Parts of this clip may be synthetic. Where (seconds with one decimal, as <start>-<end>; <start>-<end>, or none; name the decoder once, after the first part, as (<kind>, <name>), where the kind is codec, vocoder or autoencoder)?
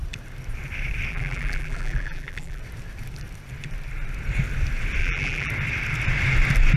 1.1-2.6 (vocoder, BigVGAN v2); 5.0-5.5